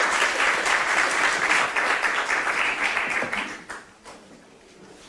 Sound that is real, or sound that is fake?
fake